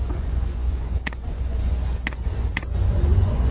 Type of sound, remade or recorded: remade